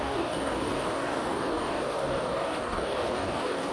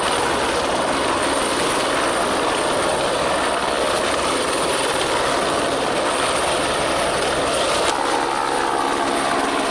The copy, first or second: first